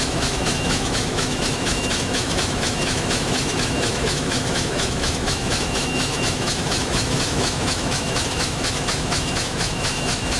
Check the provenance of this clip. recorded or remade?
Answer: remade